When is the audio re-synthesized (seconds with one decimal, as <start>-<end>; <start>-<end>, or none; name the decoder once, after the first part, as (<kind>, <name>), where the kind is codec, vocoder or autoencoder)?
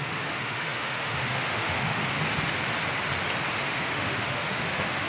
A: 0.0-2.1 (autoencoder, DAC-VAE); 3.5-5.1